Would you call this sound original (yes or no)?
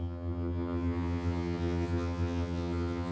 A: no